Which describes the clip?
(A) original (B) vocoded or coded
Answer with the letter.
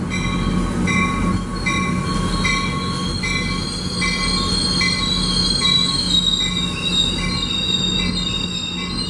A